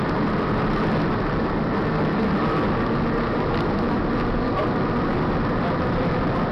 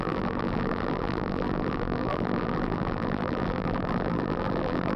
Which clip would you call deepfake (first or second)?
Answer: second